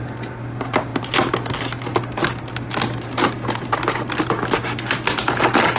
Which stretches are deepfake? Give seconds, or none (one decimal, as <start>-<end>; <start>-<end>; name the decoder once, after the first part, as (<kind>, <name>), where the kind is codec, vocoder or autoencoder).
none